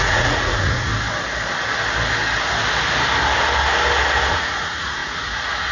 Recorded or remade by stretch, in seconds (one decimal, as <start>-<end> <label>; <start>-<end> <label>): 0.0-0.9 remade; 0.9-4.3 recorded; 4.3-5.7 remade